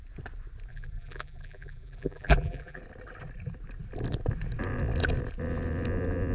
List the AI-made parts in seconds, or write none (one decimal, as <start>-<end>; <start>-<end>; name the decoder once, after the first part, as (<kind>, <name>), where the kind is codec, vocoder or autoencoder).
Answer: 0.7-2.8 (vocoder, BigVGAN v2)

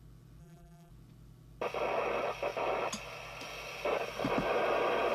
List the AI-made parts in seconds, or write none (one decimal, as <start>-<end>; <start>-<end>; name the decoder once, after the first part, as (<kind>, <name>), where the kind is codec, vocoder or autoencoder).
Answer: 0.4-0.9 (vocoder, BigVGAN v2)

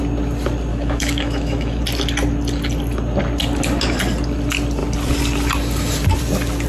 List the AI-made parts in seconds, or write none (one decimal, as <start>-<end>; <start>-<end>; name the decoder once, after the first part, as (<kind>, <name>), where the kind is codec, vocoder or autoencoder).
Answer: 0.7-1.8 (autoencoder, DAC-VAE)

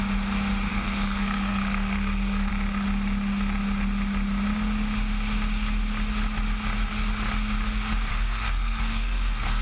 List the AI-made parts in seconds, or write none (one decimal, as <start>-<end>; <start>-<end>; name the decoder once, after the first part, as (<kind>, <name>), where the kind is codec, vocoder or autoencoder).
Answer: 0.7-2.5 (codec, SNAC); 8.1-9.6

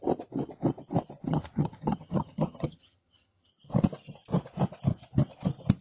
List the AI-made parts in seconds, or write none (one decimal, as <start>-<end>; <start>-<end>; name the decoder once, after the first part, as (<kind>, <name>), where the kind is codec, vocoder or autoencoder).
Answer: 1.3-3.5 (vocoder, HiFi-GAN)

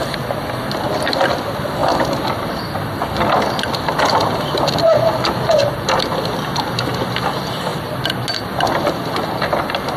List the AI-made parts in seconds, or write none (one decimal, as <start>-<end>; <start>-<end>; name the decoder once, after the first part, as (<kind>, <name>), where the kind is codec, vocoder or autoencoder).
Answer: none

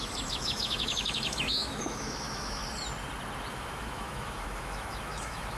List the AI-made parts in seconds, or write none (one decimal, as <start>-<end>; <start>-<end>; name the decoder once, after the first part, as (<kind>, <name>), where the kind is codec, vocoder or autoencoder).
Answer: 0.0-2.6 (autoencoder, DAC-VAE); 3.5-5.6